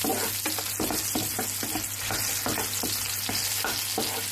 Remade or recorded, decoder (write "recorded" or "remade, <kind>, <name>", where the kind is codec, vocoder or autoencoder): recorded